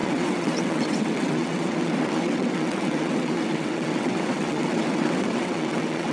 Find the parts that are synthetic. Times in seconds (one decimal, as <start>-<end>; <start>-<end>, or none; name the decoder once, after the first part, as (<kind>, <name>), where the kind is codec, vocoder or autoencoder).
0.0-6.1 (vocoder, WaveNeXt)